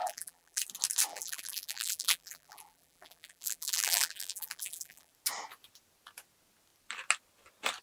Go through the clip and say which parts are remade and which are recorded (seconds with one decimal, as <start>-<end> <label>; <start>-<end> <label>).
0.0-0.6 remade; 0.6-1.1 recorded; 1.1-5.1 remade; 5.1-7.8 recorded